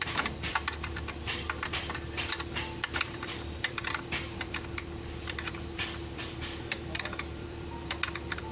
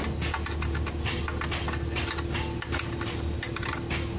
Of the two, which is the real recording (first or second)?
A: second